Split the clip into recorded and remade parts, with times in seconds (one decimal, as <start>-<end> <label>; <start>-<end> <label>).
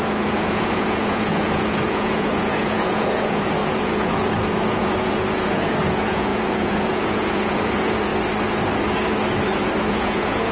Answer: 0.0-8.1 remade; 8.1-9.9 recorded; 9.9-10.5 remade